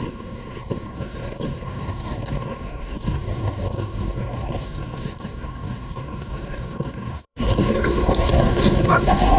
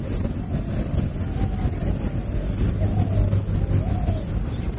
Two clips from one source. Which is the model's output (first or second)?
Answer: first